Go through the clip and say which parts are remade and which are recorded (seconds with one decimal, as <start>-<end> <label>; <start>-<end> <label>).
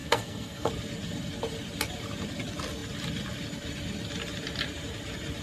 0.0-0.7 remade; 0.7-5.4 recorded